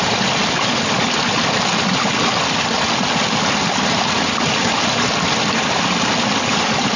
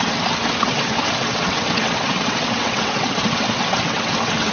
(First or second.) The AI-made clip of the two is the second